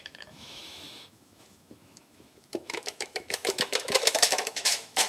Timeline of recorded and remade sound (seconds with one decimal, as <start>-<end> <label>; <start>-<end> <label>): 0.0-5.1 remade